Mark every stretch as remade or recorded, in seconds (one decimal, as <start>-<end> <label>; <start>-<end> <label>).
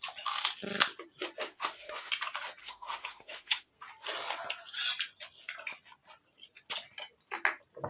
0.0-1.4 recorded; 1.4-2.1 remade; 2.1-2.6 recorded; 2.6-3.7 remade; 3.7-7.9 recorded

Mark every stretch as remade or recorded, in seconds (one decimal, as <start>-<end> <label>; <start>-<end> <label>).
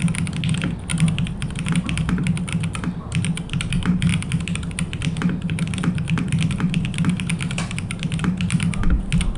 0.0-9.4 recorded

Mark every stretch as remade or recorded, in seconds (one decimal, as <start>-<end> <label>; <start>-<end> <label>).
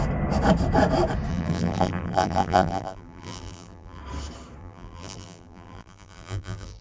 0.0-1.3 recorded; 1.3-4.0 remade; 4.0-4.6 recorded; 4.6-6.8 remade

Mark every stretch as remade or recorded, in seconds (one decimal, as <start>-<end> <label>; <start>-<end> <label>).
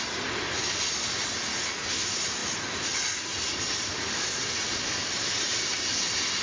0.0-6.4 recorded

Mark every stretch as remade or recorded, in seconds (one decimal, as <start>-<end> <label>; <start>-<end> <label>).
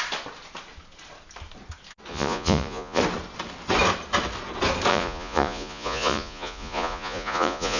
0.0-2.1 recorded; 2.1-3.0 remade; 3.0-4.9 recorded; 4.9-7.8 remade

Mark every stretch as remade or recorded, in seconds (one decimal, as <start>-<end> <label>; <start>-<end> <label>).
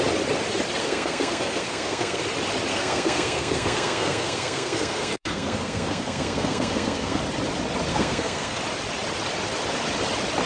0.0-0.8 recorded; 0.8-2.2 remade; 2.2-2.7 recorded; 2.7-7.2 remade; 7.2-7.9 recorded; 7.9-8.6 remade; 8.6-10.5 recorded